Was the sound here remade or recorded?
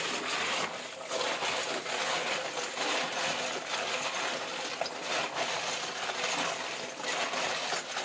recorded